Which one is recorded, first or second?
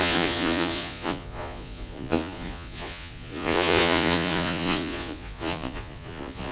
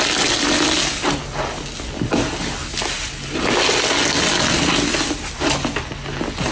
second